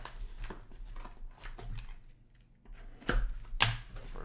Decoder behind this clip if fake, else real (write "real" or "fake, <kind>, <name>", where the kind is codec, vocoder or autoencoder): real